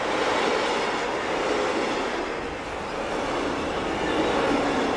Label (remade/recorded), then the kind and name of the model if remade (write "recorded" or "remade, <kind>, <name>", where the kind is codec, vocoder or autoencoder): recorded